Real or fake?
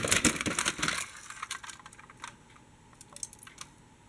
real